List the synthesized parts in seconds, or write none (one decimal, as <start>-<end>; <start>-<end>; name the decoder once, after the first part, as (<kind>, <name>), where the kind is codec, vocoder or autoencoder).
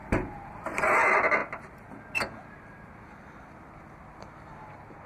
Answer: 0.0-0.8 (vocoder, BigVGAN v2)